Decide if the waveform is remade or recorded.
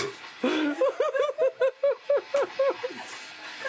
recorded